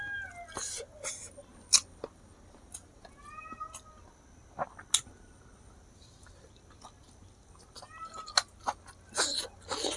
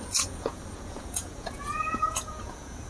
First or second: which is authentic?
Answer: first